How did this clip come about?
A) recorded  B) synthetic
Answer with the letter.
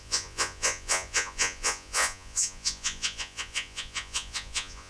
B